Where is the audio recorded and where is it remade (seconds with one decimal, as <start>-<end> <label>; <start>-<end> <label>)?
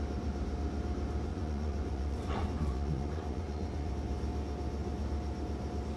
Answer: 0.0-1.3 recorded; 1.3-3.9 remade; 3.9-6.0 recorded